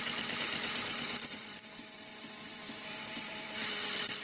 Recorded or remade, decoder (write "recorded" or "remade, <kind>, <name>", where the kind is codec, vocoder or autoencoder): remade, vocoder, BigVGAN v2